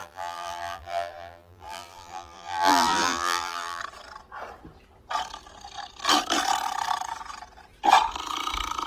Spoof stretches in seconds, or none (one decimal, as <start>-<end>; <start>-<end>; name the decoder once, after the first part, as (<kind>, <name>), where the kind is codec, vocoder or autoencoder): 0.0-3.8 (vocoder, BigVGAN v2)